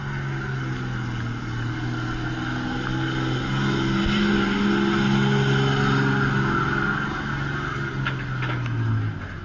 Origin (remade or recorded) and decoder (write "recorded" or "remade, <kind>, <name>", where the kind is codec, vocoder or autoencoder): recorded